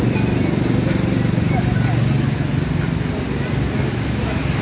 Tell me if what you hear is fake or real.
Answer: real